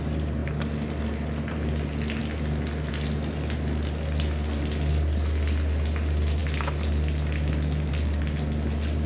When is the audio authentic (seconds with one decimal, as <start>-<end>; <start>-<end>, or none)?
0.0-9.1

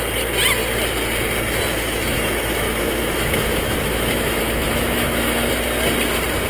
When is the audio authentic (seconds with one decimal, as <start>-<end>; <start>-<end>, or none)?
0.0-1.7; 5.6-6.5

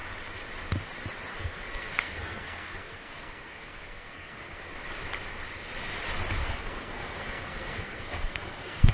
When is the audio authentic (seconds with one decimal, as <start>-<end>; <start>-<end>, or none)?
0.0-1.3; 4.7-6.4

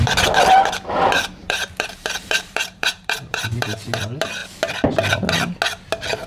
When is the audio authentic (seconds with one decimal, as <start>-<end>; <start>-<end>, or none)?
0.0-1.4; 4.0-6.3

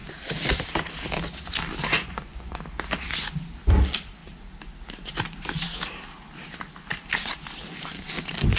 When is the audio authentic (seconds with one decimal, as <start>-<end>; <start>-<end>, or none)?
0.0-1.9; 2.6-8.6

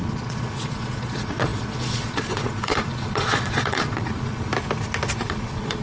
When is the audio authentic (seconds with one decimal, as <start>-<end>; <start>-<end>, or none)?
4.5-5.2

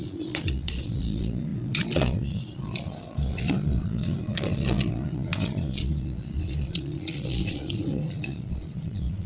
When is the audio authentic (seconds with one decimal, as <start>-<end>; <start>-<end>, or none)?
none